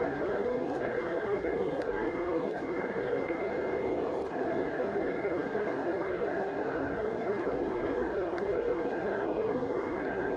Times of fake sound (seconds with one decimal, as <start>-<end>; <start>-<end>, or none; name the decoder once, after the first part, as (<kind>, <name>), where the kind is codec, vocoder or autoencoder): 0.0-3.5 (codec, SNAC); 4.3-10.4